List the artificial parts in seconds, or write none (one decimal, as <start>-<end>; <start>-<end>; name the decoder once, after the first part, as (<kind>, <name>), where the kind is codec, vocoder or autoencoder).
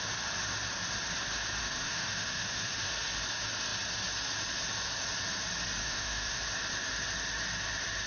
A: 1.6-2.7 (autoencoder, DAC-VAE); 5.8-6.4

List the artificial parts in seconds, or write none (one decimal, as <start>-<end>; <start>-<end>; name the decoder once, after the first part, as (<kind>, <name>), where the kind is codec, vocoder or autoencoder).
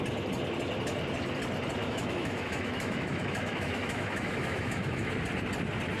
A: 1.8-5.1 (autoencoder, DAC-VAE)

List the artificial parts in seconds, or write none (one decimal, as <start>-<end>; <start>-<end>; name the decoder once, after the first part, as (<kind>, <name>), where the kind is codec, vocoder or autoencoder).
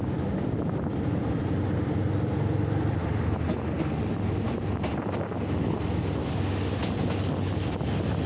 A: none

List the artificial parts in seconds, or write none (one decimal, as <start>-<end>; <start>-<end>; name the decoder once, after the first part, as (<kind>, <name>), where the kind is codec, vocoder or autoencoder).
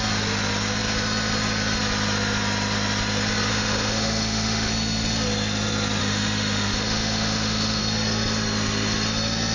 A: 3.5-4.7 (autoencoder, DAC-VAE); 6.0-7.8